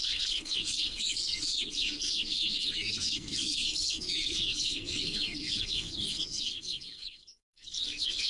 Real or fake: fake